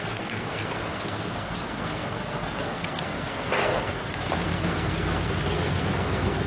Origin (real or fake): fake